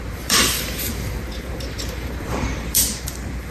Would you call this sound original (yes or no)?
no